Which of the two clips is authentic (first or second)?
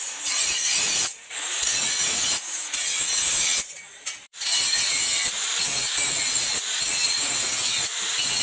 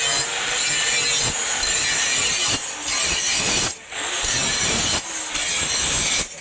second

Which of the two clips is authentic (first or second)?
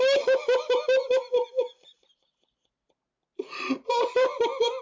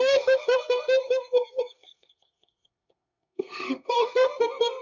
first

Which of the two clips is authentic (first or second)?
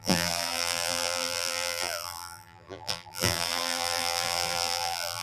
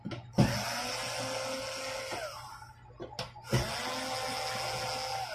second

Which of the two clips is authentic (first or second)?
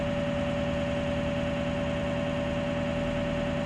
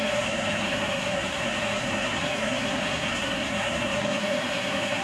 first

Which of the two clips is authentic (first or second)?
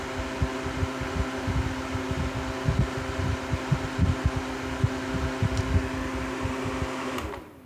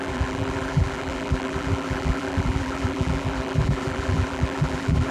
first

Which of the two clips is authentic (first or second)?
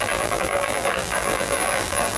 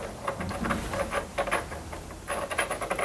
second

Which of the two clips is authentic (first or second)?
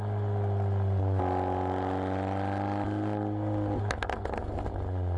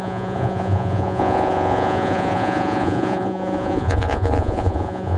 first